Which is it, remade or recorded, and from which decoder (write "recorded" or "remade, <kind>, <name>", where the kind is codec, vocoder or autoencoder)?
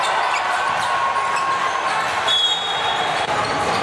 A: recorded